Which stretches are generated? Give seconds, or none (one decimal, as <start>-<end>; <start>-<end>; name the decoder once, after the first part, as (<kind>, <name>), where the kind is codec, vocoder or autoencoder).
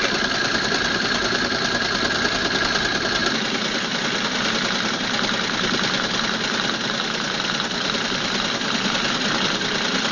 none